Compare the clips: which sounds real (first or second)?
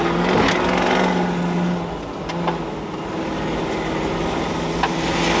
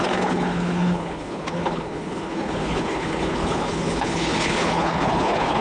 first